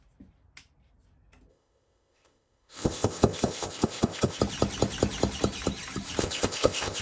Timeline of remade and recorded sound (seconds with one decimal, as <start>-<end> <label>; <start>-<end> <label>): 0.0-1.5 recorded; 1.5-4.4 remade; 4.4-6.2 recorded; 6.2-7.0 remade